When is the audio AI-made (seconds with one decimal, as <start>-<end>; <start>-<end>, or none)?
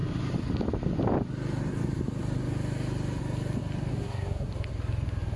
3.9-4.5